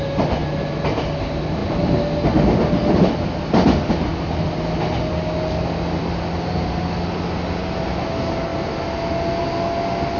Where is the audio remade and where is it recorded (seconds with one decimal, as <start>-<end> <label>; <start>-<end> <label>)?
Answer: 0.0-10.2 recorded